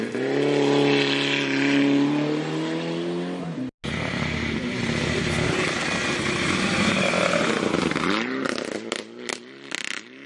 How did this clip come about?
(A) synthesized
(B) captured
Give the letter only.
B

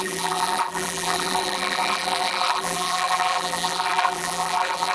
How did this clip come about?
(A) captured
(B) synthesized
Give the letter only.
B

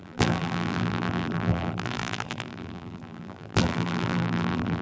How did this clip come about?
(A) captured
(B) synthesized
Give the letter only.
B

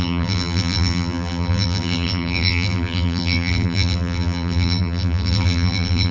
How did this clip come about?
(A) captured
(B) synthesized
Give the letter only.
B